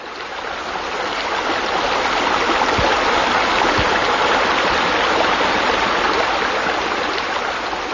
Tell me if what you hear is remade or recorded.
recorded